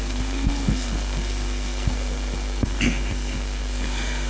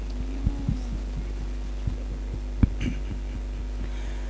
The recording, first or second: second